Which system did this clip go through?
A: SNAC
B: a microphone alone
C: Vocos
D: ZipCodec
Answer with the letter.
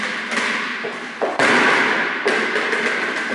B